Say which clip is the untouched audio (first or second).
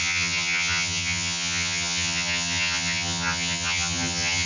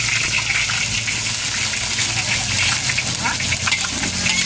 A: second